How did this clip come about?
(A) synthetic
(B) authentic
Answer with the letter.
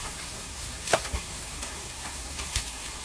A